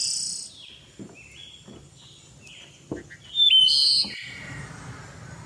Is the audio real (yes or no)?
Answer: yes